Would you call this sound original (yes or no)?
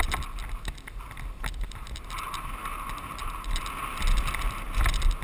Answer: yes